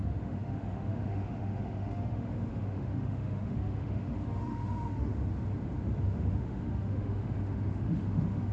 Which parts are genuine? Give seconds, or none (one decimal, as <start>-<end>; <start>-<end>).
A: 5.1-6.0